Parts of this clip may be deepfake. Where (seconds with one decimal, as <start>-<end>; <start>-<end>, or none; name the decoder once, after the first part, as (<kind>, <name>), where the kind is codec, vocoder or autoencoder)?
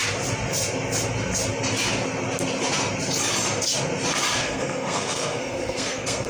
4.4-6.3 (codec, SNAC)